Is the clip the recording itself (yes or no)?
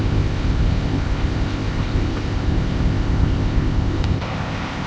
no